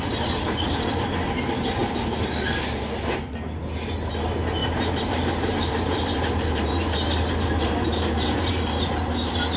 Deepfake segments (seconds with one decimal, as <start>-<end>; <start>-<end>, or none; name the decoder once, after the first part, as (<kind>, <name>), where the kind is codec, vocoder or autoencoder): 4.6-8.9 (vocoder, BigVGAN v2)